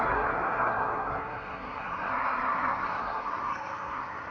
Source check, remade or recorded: remade